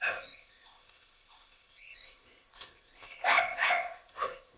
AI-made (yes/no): yes